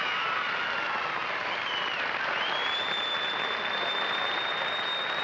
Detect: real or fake real